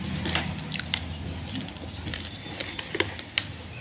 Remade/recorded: recorded